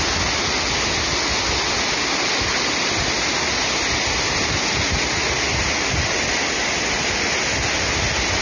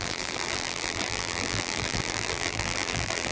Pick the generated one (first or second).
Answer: second